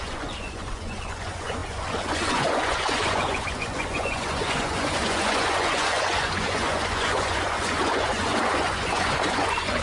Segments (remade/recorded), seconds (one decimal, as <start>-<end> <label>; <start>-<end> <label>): 0.0-9.8 remade